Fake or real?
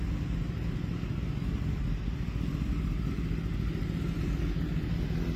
real